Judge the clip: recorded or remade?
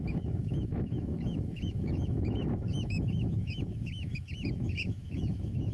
remade